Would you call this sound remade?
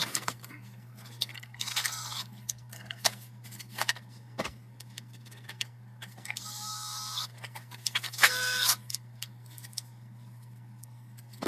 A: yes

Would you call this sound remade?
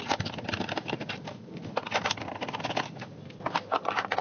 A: no